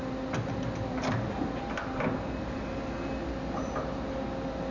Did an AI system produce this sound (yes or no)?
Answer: no